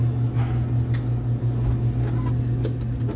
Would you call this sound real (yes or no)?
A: yes